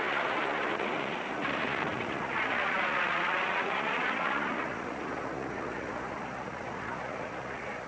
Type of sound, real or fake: fake